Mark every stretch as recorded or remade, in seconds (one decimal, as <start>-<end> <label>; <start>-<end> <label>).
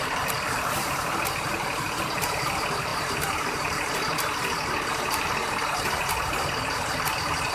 0.0-7.5 remade